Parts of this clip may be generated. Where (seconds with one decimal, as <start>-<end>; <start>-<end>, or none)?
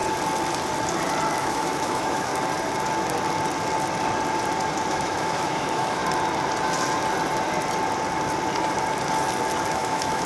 1.4-2.3; 4.9-6.0; 9.7-10.3